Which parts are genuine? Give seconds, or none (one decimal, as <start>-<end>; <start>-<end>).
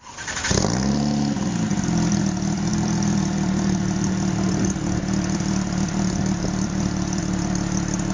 0.0-2.7; 7.2-8.1